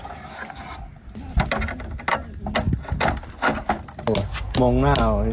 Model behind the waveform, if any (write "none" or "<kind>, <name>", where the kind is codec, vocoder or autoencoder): none